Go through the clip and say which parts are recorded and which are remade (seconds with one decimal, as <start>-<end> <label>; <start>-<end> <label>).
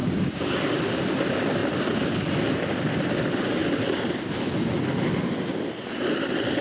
0.0-0.8 remade; 0.8-6.6 recorded